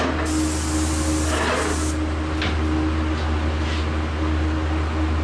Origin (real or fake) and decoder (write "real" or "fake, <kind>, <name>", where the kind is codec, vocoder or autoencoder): real